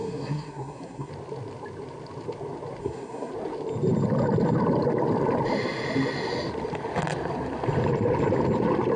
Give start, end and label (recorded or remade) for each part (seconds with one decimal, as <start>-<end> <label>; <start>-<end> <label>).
0.0-1.1 remade; 1.1-2.8 recorded; 2.8-3.3 remade; 3.3-9.0 recorded